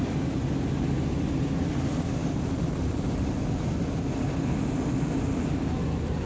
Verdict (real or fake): real